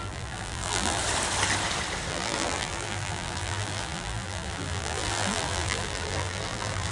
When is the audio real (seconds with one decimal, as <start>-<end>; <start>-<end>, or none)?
1.0-2.1